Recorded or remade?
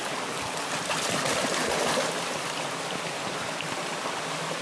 recorded